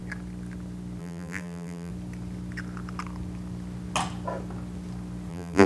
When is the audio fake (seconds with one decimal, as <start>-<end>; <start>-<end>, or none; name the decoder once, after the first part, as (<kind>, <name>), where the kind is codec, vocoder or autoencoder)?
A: 1.0-1.9 (vocoder, BigVGAN v2); 5.3-5.7